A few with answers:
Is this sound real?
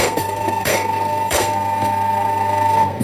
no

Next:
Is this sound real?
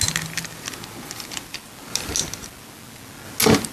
yes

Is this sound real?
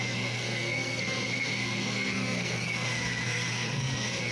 no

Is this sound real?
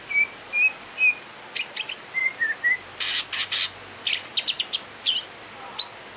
yes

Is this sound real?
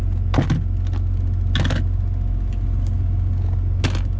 yes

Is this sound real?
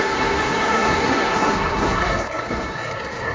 no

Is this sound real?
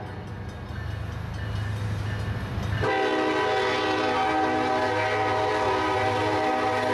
yes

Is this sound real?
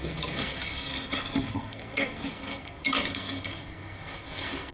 no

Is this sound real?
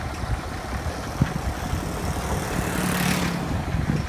yes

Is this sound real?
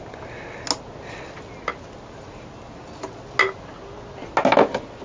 yes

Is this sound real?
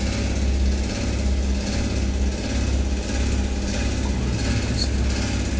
yes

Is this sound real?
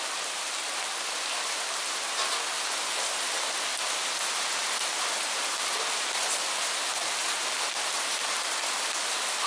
yes